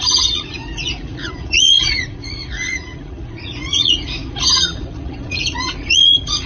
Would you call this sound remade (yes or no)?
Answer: yes